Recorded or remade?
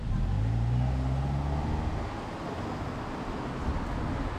recorded